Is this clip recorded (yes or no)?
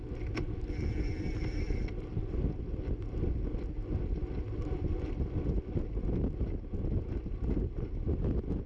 yes